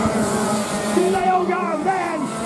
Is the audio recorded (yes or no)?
no